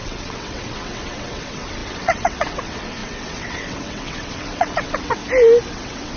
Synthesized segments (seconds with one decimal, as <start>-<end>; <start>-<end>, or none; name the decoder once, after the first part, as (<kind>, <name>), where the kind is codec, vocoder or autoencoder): 0.0-5.2 (vocoder, WaveNeXt); 5.7-6.2